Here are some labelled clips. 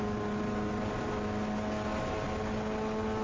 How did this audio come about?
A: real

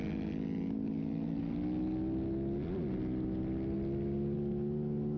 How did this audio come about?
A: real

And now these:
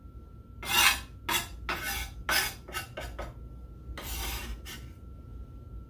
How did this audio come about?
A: real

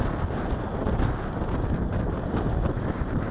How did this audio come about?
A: real